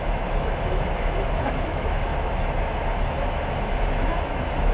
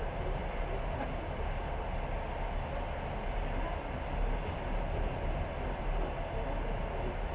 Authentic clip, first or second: second